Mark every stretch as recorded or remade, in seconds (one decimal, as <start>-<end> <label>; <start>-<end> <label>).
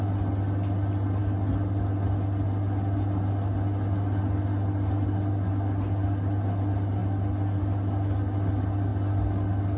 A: 0.0-9.8 recorded